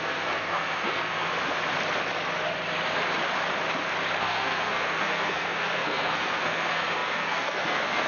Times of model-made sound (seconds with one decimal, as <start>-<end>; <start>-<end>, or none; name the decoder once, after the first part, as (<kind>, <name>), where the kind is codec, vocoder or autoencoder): 0.0-1.3 (codec, SNAC); 4.2-8.1